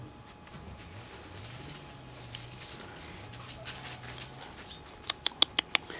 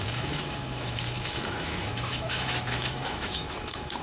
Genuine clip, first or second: first